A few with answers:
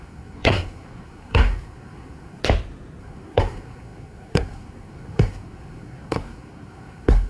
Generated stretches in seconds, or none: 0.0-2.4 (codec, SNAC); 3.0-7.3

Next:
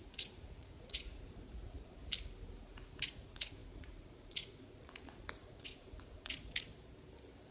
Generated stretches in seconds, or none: 0.0-2.0 (vocoder, Vocos); 3.0-6.7

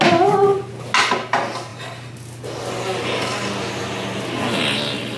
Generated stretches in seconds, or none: none

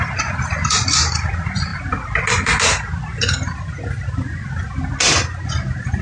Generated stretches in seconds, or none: none

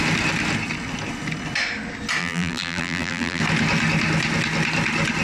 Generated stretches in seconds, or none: 2.2-3.4 (vocoder, BigVGAN v2)

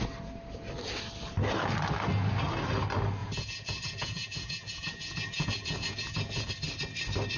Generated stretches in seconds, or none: 3.2-6.5 (vocoder, Vocos)